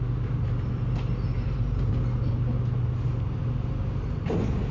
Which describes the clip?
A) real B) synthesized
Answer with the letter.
A